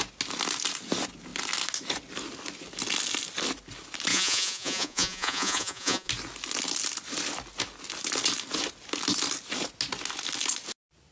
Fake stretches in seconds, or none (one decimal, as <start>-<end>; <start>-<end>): 4.1-6.1

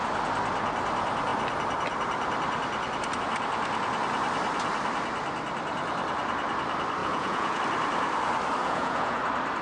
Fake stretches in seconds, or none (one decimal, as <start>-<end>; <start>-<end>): 7.0-7.6; 8.6-9.2